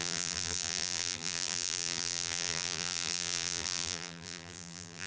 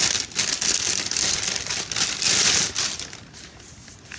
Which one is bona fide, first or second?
second